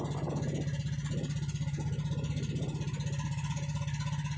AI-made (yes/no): no